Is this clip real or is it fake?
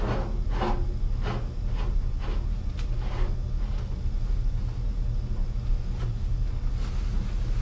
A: real